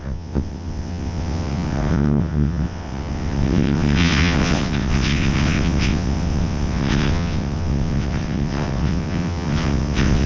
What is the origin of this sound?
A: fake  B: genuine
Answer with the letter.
A